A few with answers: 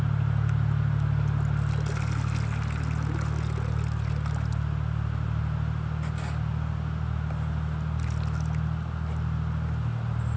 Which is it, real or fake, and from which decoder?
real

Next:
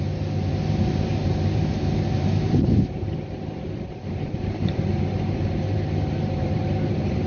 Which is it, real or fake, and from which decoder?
fake, vocoder, BigVGAN v2